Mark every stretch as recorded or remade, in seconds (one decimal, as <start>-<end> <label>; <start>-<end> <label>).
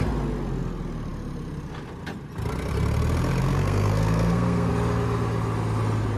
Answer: 0.0-3.4 recorded; 3.4-4.7 remade; 4.7-6.2 recorded